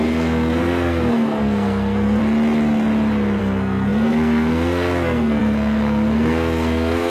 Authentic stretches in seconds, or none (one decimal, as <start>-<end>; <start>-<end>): 2.2-3.4

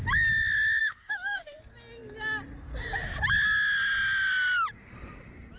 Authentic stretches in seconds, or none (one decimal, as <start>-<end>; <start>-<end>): 0.0-0.8; 1.6-5.6

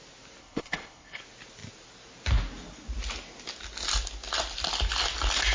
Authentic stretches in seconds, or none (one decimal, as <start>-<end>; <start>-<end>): 0.0-0.4; 1.2-5.5

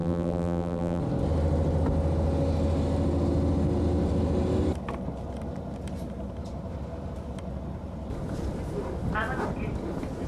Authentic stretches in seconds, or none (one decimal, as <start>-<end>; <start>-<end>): 1.0-10.3

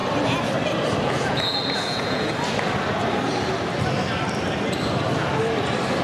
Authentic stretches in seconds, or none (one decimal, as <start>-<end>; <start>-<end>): 0.0-1.0; 2.3-6.0

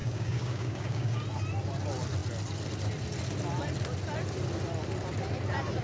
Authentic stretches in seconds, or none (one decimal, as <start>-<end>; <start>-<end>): 1.2-5.8